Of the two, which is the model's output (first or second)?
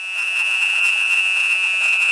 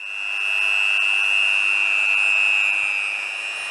first